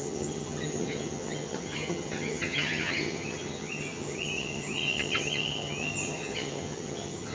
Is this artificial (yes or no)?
yes